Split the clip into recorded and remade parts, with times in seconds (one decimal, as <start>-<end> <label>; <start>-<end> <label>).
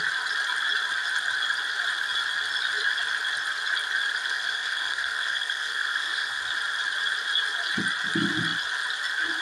0.0-4.2 recorded; 4.2-6.4 remade; 6.4-9.4 recorded